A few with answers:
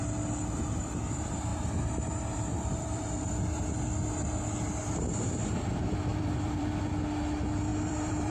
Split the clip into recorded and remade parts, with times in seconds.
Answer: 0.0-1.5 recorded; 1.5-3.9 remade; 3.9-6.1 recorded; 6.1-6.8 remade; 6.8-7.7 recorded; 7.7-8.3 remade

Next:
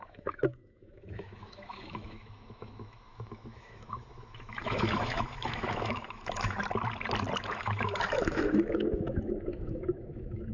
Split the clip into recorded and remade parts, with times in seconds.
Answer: 0.0-6.6 remade; 6.6-7.4 recorded; 7.4-10.5 remade